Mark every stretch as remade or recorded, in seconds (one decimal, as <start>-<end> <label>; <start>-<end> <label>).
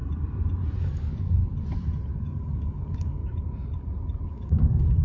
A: 0.0-0.8 recorded; 0.8-1.4 remade; 1.4-2.2 recorded; 2.2-3.2 remade; 3.2-4.3 recorded; 4.3-5.0 remade